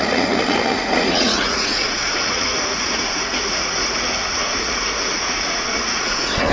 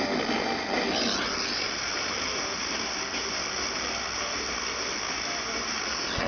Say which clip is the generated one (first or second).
first